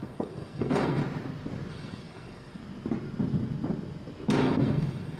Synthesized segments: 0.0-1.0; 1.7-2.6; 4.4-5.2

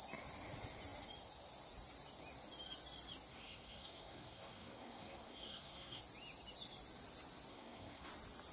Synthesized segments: 3.3-6.0; 7.5-8.1

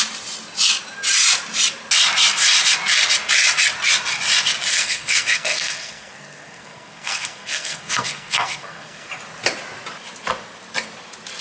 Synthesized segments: 4.7-9.1

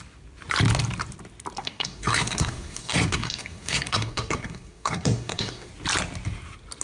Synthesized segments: 1.6-5.7

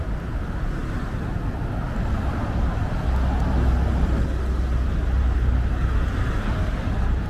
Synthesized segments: none

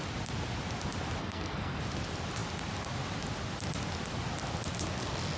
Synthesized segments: 1.2-1.8

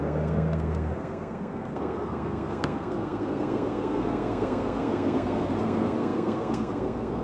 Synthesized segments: 0.0-7.2